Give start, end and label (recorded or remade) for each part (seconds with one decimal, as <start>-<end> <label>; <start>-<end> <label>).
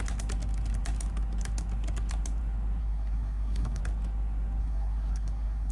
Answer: 0.0-2.8 recorded; 2.8-3.8 remade; 3.8-4.6 recorded; 4.6-5.7 remade